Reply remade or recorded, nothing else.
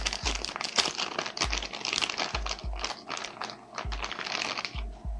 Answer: recorded